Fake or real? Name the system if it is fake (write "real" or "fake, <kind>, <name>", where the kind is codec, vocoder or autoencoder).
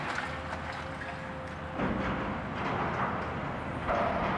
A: real